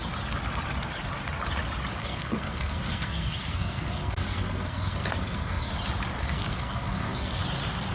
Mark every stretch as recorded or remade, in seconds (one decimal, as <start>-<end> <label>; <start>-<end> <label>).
0.0-2.0 recorded; 2.0-5.7 remade; 5.7-6.2 recorded; 6.2-7.4 remade; 7.4-7.9 recorded